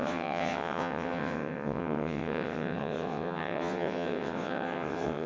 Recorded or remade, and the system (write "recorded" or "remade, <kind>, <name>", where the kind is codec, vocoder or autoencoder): remade, vocoder, WaveNeXt